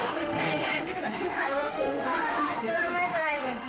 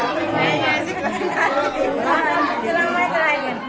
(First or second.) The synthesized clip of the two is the first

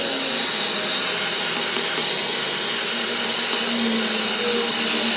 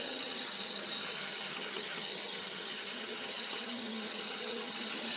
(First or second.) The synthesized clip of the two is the second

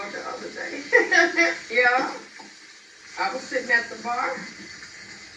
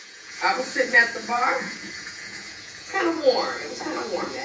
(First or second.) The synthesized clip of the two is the second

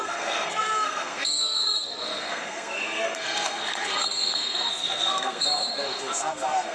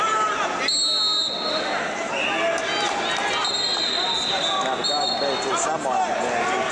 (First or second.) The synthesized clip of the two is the first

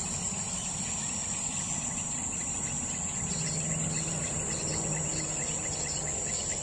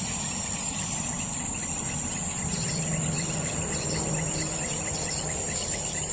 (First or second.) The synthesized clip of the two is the second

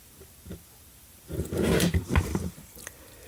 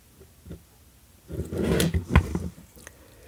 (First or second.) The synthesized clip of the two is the first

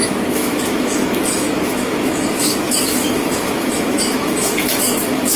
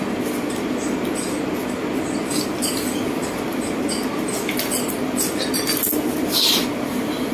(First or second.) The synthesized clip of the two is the first